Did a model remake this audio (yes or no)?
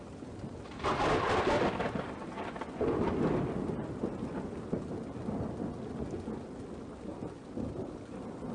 no